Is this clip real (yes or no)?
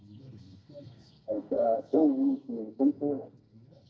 no